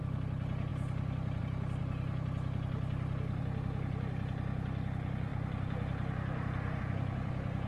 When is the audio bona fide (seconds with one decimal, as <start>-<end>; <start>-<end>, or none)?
0.0-7.7

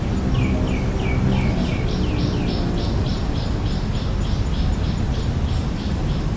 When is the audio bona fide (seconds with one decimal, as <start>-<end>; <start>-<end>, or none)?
0.0-6.4

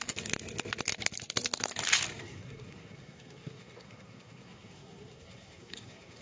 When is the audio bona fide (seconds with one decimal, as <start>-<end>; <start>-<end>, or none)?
0.0-2.2

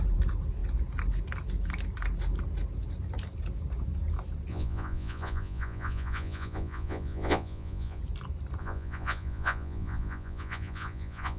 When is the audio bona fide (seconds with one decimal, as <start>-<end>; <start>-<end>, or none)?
0.0-4.5; 8.0-8.6

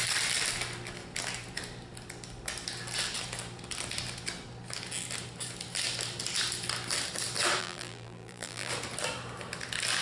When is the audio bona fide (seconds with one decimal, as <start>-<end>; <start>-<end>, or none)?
0.0-7.6; 8.7-10.0

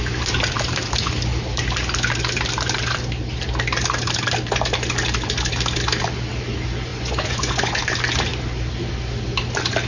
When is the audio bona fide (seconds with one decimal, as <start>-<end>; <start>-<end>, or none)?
0.0-6.9; 7.8-9.9

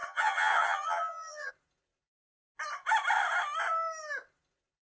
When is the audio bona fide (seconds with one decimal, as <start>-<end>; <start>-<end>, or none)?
1.5-5.0

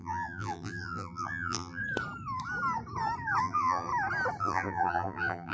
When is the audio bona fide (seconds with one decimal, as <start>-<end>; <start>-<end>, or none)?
1.8-3.4; 3.9-4.4